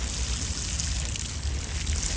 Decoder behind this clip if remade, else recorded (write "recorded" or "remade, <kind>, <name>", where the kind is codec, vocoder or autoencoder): recorded